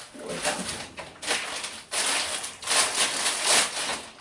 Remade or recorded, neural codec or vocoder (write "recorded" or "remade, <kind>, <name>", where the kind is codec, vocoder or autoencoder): recorded